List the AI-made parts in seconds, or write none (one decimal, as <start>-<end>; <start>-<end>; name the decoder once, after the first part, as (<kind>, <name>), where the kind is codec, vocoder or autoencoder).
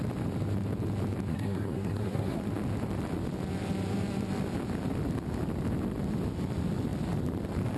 1.3-2.4 (codec, SNAC)